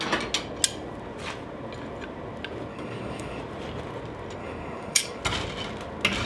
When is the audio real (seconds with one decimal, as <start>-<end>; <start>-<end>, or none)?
0.0-2.7; 3.4-4.4; 5.2-6.3